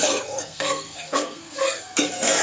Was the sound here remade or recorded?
remade